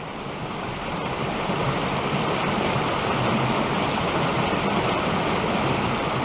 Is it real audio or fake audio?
real